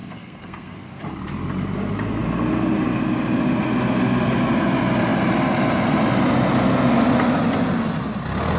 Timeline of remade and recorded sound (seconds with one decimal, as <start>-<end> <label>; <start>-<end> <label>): 0.0-1.0 remade; 1.0-8.6 recorded